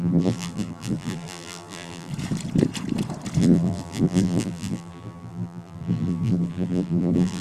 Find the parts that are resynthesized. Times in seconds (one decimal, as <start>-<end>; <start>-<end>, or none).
0.0-2.1; 3.4-7.4

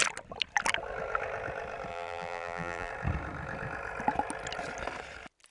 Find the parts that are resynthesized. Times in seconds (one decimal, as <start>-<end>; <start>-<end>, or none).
1.9-2.9

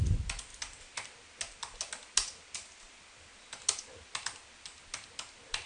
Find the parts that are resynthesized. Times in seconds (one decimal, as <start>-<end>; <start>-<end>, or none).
none

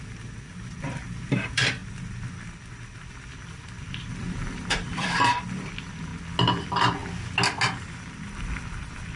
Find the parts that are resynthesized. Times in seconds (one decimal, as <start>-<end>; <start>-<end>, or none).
0.0-1.8; 3.1-6.1; 6.6-7.0; 7.9-9.2

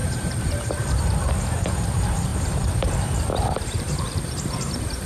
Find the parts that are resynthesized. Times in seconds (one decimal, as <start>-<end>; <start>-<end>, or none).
0.0-5.1

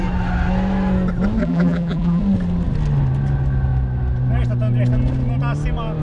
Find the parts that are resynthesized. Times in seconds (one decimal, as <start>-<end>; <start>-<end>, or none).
1.4-2.2

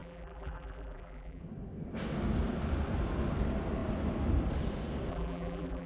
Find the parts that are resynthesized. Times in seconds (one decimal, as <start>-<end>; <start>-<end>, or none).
0.0-1.4; 5.1-5.9

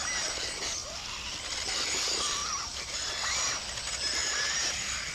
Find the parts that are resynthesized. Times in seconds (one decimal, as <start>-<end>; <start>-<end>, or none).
4.2-5.1